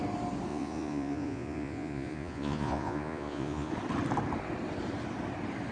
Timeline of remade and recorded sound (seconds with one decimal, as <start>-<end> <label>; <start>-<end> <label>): 0.0-0.5 recorded; 0.5-3.7 remade; 3.7-5.7 recorded